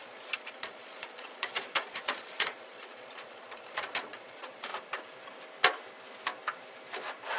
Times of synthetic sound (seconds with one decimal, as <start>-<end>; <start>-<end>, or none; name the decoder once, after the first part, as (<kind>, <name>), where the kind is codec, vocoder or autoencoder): 0.0-4.7 (vocoder, Vocos)